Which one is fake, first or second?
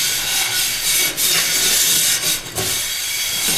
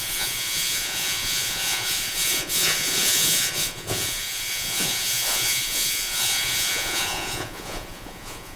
second